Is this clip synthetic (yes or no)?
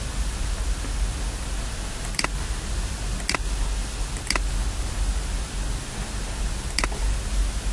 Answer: no